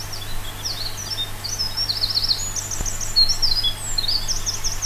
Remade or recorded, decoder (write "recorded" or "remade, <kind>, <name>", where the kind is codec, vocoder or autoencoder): recorded